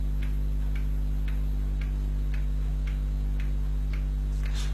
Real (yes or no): yes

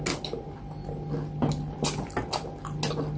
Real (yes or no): yes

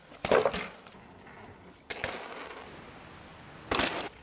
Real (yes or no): yes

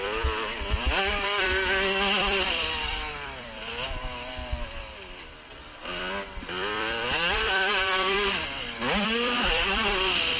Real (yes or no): no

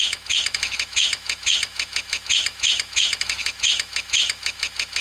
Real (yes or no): no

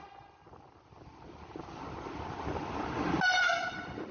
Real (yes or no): yes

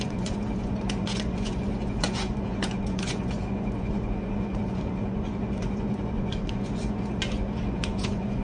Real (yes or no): no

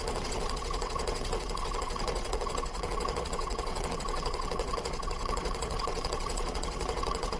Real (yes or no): no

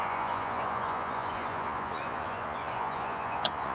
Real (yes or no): no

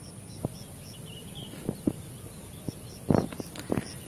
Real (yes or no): yes